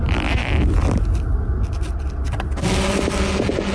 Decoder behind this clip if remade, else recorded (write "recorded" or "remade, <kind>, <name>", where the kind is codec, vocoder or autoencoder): recorded